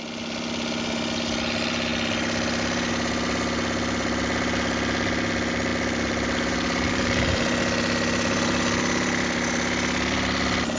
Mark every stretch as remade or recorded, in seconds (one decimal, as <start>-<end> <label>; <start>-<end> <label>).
0.0-5.7 recorded; 5.7-7.6 remade; 7.6-10.8 recorded